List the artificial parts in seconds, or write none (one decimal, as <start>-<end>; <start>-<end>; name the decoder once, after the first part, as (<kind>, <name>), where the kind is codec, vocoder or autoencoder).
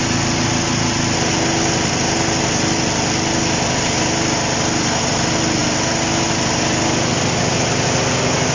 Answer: none